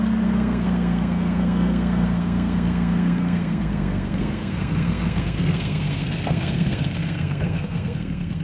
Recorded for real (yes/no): no